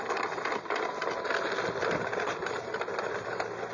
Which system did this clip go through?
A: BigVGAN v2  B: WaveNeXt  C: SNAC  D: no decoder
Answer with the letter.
D